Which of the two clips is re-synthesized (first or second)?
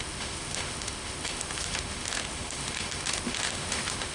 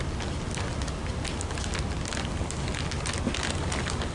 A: first